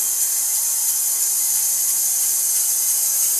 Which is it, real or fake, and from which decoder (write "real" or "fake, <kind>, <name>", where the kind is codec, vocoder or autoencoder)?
real